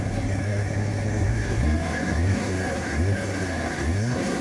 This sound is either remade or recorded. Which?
remade